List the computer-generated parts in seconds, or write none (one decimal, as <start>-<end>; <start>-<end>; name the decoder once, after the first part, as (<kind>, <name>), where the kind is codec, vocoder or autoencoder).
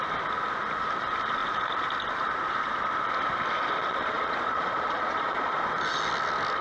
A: 3.8-5.6 (vocoder, Vocos)